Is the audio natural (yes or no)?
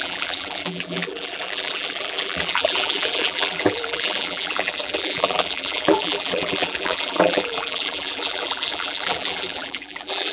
no